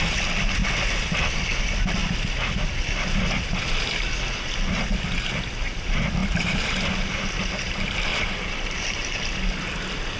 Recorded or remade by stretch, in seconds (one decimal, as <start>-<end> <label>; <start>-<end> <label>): 0.0-6.2 recorded; 6.2-6.9 remade; 6.9-8.1 recorded; 8.1-9.2 remade; 9.2-10.2 recorded